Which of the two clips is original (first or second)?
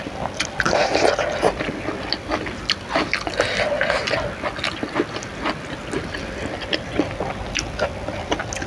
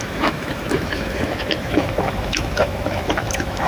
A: first